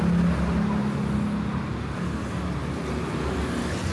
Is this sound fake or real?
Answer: real